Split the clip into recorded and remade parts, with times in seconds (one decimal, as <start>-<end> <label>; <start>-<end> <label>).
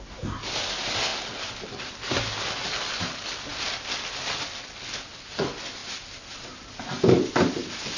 0.0-8.0 recorded